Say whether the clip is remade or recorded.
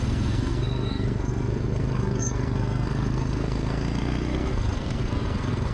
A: remade